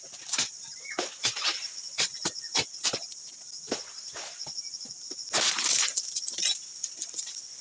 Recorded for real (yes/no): yes